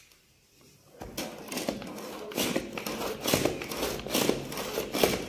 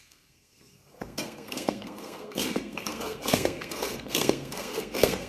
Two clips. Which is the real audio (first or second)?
first